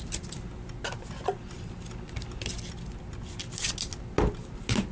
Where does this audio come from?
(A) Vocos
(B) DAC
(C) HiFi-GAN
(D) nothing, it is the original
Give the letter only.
D